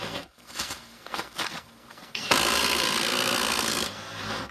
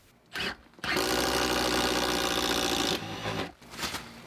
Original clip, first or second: second